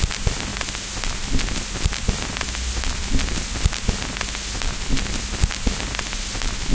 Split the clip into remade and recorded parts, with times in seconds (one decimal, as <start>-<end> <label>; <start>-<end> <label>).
0.0-6.7 recorded